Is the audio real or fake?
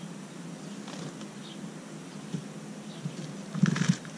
real